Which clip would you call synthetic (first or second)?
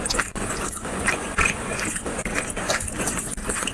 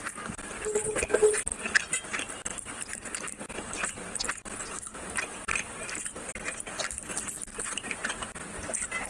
first